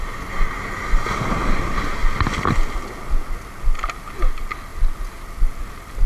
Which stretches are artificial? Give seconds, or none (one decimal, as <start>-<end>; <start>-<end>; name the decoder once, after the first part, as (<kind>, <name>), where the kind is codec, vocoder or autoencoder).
none